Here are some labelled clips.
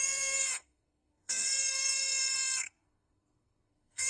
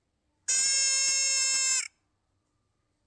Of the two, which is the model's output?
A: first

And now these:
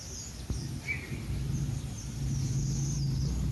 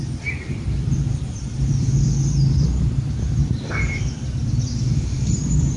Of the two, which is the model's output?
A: second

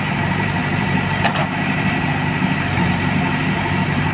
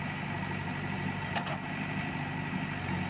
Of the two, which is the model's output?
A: first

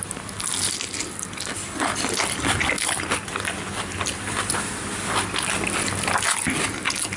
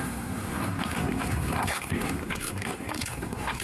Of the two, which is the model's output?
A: second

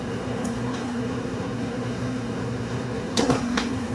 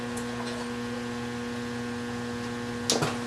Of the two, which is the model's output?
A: first